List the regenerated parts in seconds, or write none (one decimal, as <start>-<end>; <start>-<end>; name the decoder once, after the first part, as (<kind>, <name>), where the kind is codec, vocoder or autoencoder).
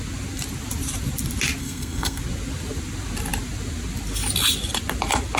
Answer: 1.6-2.2 (codec, SNAC)